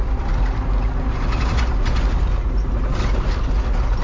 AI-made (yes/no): no